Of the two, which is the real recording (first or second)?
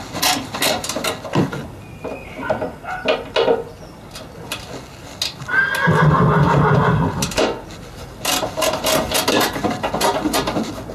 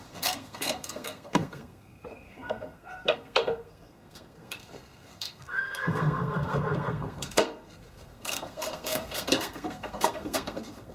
first